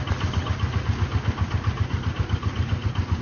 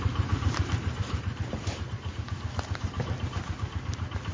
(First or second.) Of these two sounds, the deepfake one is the second